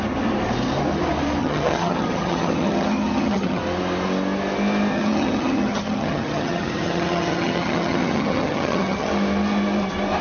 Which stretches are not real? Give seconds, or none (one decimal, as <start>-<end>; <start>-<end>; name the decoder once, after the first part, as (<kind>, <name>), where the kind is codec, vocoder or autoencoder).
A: 1.4-3.6 (vocoder, HiFi-GAN); 4.9-9.1